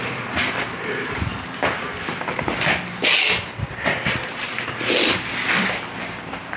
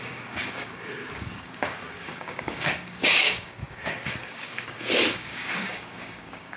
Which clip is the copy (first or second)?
second